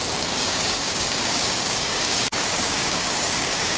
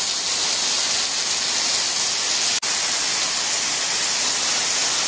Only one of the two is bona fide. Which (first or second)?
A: second